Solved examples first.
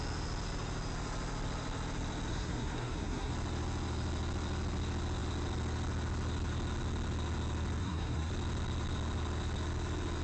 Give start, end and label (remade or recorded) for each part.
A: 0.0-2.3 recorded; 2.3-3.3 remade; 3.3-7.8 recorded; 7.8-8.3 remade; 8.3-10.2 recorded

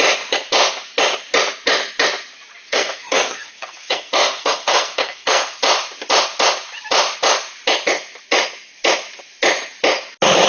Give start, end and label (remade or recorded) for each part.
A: 0.0-2.7 recorded; 2.7-5.6 remade; 5.6-10.5 recorded

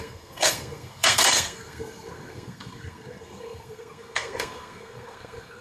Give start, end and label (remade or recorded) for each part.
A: 0.0-5.6 remade

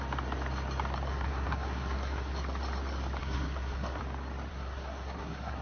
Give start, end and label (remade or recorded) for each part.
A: 0.0-1.1 recorded; 1.1-2.3 remade; 2.3-3.2 recorded; 3.2-4.0 remade; 4.0-4.5 recorded; 4.5-5.6 remade

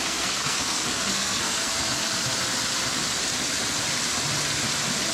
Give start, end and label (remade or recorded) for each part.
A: 0.0-2.0 remade; 2.0-5.1 recorded

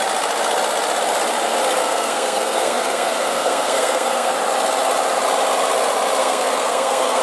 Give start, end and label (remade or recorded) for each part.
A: 0.0-1.8 recorded; 1.8-4.3 remade; 4.3-6.2 recorded; 6.2-7.2 remade